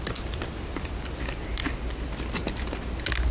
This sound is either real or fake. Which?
real